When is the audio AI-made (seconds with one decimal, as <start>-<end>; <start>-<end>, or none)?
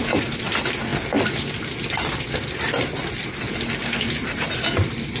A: none